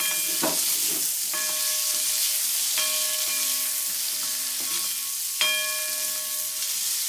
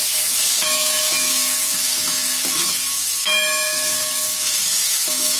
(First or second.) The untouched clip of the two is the first